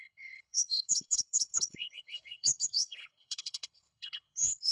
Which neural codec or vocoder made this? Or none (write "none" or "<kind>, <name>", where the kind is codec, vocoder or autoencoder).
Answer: codec, HILCodec